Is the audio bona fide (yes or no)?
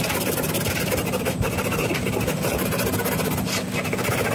yes